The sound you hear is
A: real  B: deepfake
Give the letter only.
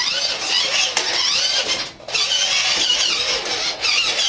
A